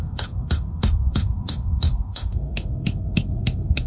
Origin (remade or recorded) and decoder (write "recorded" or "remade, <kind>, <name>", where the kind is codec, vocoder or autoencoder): remade, autoencoder, DAC-VAE